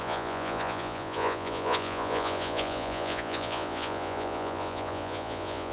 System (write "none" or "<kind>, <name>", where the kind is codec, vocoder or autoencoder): vocoder, Vocos